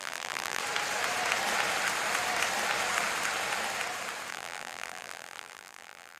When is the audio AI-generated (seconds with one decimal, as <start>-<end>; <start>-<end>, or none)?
0.0-0.6; 4.3-6.2